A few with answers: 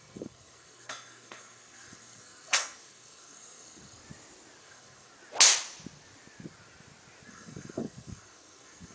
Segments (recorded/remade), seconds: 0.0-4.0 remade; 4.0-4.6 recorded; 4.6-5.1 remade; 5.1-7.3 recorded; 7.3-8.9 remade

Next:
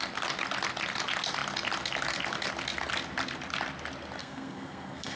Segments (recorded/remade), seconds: 0.0-4.2 recorded; 4.2-5.2 remade

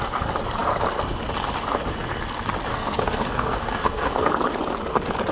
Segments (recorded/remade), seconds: 0.0-2.7 recorded; 2.7-4.3 remade; 4.3-5.3 recorded

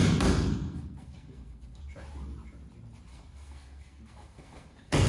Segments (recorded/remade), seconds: 0.0-1.8 remade; 1.8-3.1 recorded; 3.1-5.1 remade

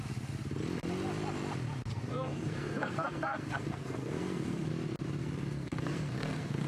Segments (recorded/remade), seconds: 0.0-1.9 recorded; 1.9-4.7 remade; 4.7-5.2 recorded; 5.2-6.7 remade